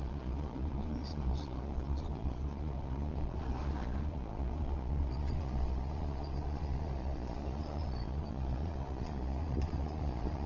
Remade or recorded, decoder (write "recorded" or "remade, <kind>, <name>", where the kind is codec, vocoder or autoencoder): remade, vocoder, Vocos